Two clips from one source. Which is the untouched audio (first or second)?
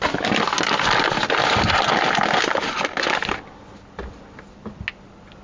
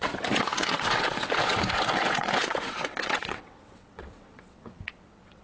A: first